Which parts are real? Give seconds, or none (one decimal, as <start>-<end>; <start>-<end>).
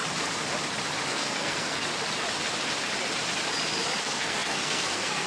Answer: 0.0-1.1; 1.8-4.0